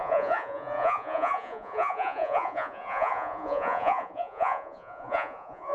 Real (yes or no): no